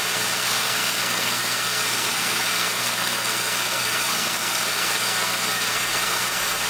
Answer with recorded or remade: remade